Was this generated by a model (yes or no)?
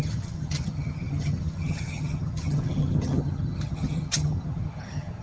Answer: yes